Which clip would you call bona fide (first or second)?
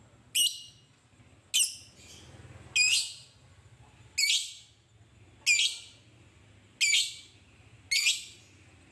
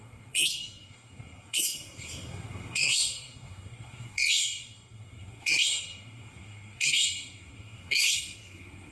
first